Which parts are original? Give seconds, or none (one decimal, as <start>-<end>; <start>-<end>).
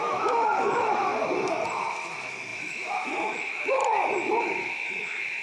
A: 1.1-1.9; 3.8-4.4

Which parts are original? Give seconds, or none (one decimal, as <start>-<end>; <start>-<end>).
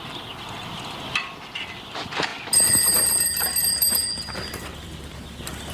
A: 0.0-5.7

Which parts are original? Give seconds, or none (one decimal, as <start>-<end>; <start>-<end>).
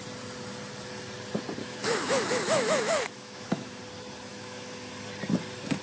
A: 0.0-1.6; 3.8-4.3; 4.9-5.8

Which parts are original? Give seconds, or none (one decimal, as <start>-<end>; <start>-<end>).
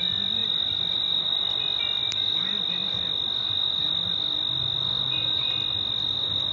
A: 0.0-6.5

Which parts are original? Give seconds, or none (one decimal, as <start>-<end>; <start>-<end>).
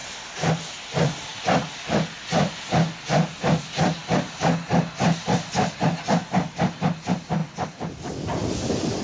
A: 0.0-9.0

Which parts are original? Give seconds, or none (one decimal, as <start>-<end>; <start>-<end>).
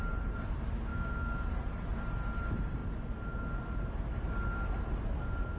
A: 0.0-0.9; 1.5-5.6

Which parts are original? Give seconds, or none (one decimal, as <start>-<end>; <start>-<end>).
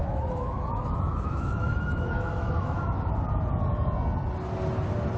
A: 3.1-5.2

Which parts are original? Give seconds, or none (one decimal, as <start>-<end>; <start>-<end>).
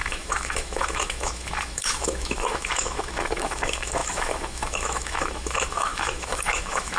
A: none